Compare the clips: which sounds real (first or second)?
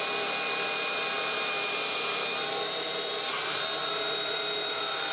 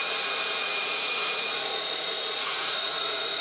first